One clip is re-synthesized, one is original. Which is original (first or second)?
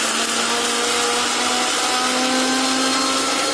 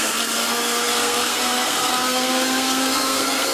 first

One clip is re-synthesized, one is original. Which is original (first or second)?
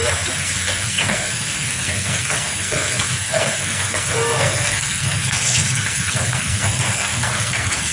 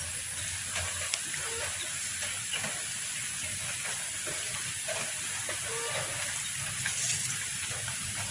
second